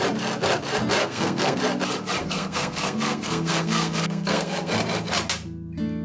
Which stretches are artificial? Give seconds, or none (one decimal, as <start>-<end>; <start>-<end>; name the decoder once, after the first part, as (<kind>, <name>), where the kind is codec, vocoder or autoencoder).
1.0-1.6 (codec, SNAC); 2.2-4.7